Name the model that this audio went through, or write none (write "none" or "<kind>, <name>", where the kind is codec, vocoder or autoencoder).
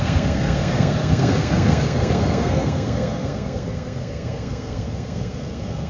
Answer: codec, SNAC